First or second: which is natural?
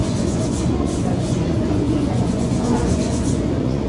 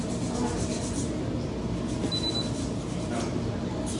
second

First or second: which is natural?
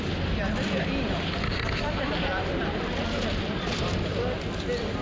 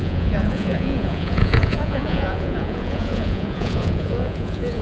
first